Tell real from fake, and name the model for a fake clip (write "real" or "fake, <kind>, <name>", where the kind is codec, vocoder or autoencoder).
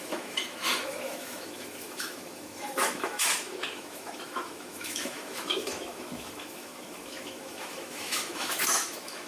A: fake, autoencoder, DAC-VAE